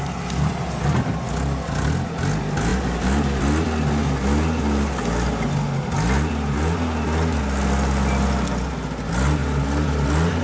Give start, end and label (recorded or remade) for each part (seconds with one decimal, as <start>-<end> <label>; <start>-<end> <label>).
0.0-10.4 recorded